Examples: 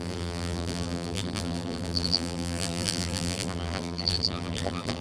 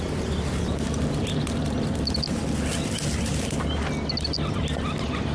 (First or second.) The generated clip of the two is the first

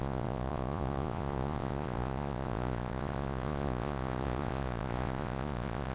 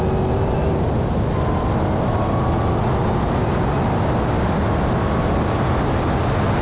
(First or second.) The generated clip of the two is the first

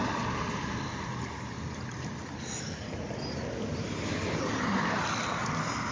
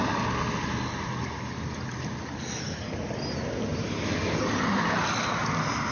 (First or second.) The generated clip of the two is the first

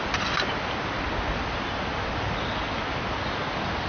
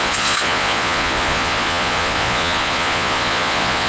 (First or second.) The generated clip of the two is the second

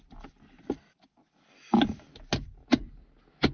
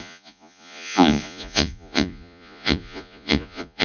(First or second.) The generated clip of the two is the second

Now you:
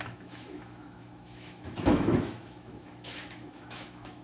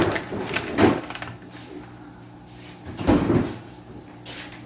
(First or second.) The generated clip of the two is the first